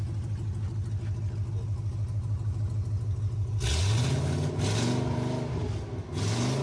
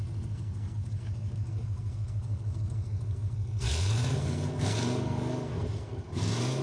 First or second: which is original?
first